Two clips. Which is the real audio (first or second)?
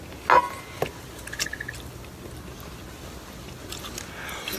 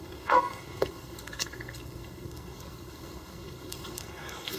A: first